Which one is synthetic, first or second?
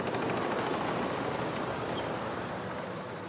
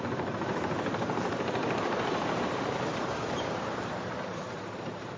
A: second